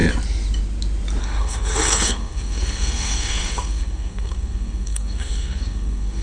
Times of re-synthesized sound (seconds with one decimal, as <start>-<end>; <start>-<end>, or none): 1.2-6.2